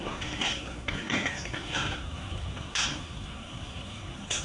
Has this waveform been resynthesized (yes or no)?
yes